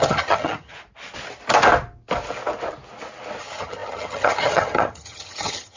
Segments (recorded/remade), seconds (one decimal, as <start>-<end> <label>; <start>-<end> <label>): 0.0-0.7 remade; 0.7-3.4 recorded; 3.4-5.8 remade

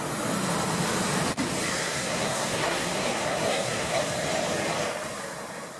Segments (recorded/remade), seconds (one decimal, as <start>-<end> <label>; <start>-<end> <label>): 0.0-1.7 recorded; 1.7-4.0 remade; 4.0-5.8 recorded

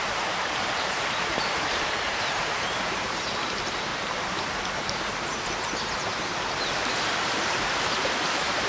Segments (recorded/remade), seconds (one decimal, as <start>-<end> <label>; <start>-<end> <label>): 0.0-3.9 remade; 3.9-6.1 recorded; 6.1-8.7 remade

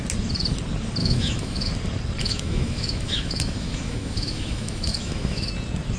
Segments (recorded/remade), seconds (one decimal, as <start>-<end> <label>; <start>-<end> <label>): 0.0-1.0 recorded; 1.0-1.7 remade; 1.7-2.2 recorded; 2.2-5.5 remade; 5.5-6.0 recorded

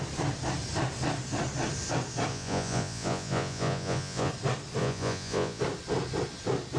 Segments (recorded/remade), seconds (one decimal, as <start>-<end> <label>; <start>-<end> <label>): 0.0-2.3 recorded; 2.3-4.3 remade; 4.3-4.8 recorded; 4.8-5.6 remade; 5.6-6.8 recorded